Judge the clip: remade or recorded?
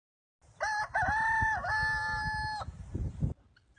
recorded